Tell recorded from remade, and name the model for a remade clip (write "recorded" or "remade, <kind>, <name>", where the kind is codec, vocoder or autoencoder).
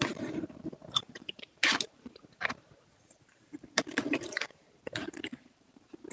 remade, vocoder, BigVGAN v2